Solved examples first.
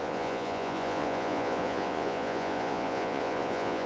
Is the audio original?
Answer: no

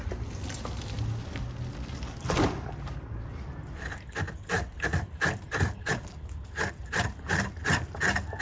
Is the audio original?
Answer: yes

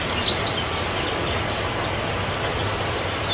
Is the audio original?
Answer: yes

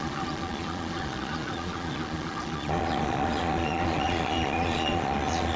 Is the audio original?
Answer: no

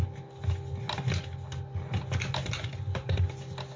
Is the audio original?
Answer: yes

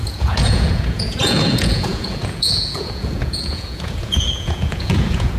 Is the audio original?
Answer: no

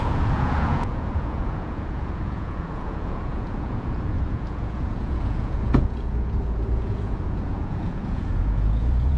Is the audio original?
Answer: no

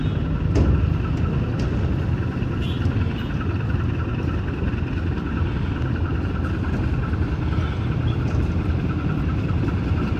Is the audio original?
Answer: yes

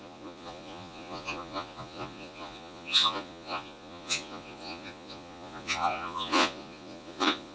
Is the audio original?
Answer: no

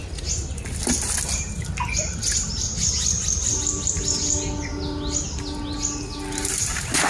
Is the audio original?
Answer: yes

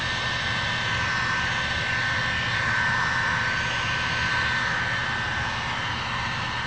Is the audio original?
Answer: yes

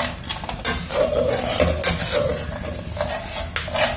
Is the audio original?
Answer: yes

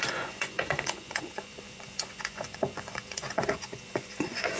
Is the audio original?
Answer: no